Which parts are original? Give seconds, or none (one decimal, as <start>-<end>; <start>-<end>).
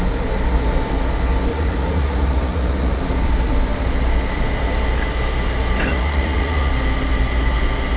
0.0-1.5; 3.0-5.9; 6.7-8.0